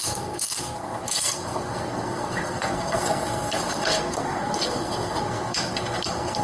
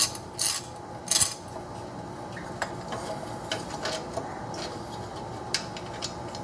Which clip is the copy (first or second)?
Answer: first